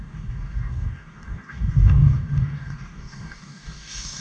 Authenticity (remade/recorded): remade